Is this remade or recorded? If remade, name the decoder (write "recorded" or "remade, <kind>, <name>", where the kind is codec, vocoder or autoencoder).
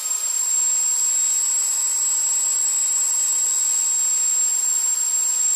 remade, vocoder, BigVGAN v2